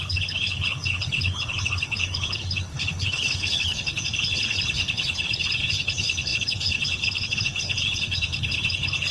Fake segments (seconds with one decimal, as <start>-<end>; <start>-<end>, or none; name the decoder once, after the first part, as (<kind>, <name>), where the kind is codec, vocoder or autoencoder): 0.0-9.1 (codec, HILCodec)